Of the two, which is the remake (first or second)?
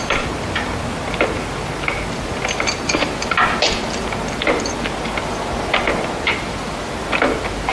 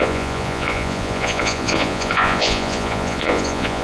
second